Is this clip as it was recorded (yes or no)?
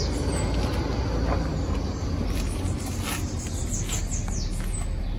yes